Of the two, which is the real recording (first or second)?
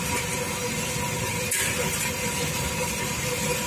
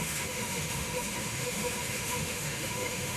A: first